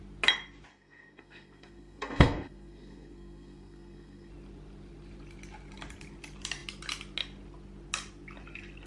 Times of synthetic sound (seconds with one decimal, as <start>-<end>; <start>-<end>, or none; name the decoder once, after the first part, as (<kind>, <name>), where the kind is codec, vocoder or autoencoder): 0.7-4.3 (codec, SNAC)